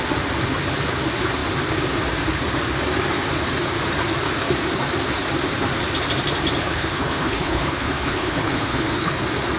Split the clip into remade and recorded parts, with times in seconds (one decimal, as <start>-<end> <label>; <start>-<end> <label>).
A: 0.0-6.6 recorded; 6.6-9.1 remade; 9.1-9.6 recorded